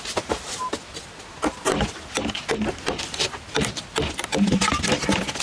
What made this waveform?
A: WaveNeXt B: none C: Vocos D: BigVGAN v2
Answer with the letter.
B